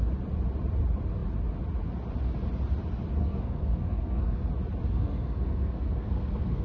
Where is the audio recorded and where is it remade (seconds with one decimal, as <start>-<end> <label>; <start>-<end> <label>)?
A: 0.0-3.2 recorded; 3.2-4.5 remade; 4.5-4.9 recorded; 4.9-6.6 remade